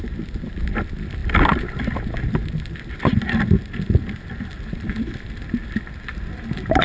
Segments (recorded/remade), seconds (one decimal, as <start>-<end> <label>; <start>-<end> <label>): 0.0-6.8 recorded